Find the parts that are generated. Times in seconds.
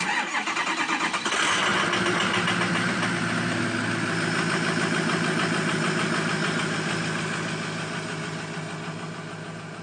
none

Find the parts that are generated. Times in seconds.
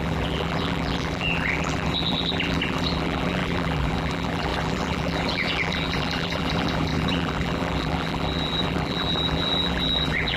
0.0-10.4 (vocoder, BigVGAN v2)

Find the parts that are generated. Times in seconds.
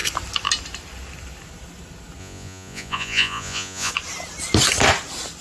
2.2-3.9 (vocoder, Vocos)